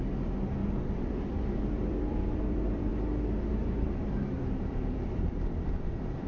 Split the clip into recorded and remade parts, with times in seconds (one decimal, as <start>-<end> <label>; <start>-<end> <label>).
0.0-2.9 remade; 2.9-3.5 recorded; 3.5-6.3 remade